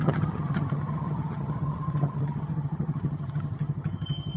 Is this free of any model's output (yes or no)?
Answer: no